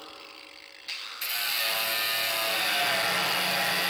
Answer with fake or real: real